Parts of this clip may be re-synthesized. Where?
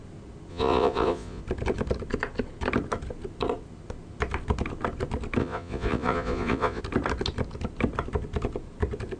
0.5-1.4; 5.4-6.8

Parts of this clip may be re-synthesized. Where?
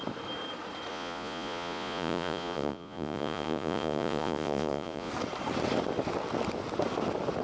0.9-5.1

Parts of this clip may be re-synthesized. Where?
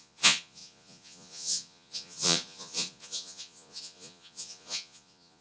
0.0-5.4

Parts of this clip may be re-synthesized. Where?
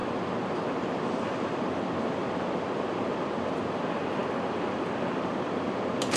none